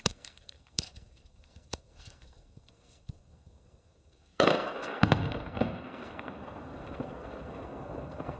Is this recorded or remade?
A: remade